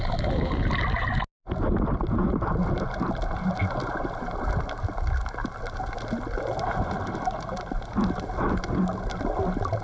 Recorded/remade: recorded